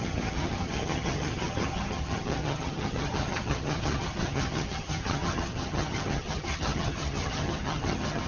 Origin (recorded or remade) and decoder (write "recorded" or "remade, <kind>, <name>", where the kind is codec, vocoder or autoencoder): remade, vocoder, HiFi-GAN